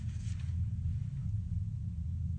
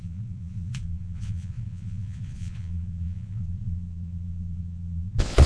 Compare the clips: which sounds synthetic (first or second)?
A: second